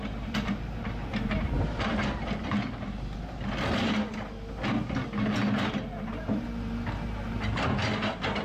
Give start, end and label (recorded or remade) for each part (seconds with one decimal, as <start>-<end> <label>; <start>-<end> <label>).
0.0-1.9 remade; 1.9-5.5 recorded; 5.5-8.4 remade